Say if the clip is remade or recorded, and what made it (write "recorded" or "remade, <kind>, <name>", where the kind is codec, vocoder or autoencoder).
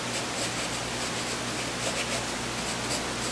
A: recorded